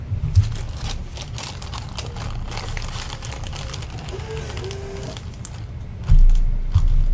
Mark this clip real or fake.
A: real